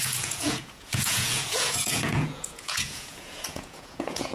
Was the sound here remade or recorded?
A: remade